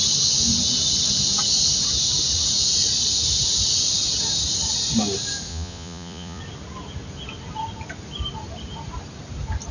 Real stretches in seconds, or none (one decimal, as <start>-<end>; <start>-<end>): 0.0-5.5; 6.4-9.7